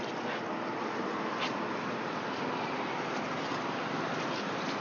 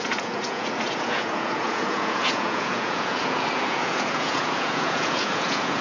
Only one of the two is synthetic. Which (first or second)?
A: second